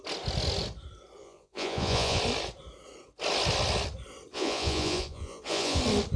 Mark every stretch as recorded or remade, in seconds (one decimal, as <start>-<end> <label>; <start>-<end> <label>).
0.0-1.2 recorded; 1.2-2.2 remade; 2.2-4.3 recorded; 4.3-5.8 remade; 5.8-6.2 recorded